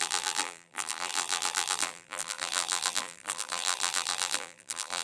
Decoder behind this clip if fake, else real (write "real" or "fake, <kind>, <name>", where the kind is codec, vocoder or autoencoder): fake, vocoder, BigVGAN v2